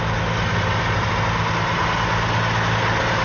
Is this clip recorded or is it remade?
recorded